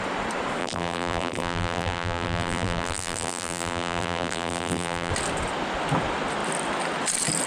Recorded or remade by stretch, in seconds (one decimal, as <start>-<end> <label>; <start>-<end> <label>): 0.0-0.6 recorded; 0.6-5.1 remade; 5.1-7.5 recorded